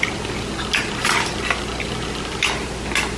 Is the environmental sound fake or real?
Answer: real